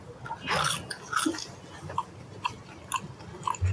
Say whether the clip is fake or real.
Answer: real